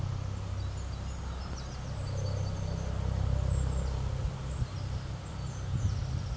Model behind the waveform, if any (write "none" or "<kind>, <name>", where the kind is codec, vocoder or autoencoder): none